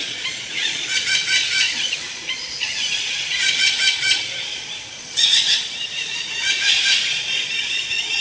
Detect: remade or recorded remade